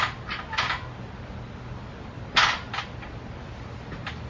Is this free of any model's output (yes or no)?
yes